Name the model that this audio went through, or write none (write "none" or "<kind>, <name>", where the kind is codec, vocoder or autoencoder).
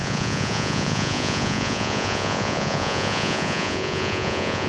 vocoder, Vocos